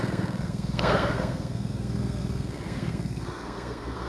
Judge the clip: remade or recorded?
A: remade